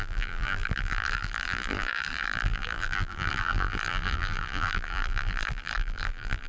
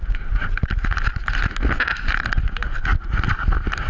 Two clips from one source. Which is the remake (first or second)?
first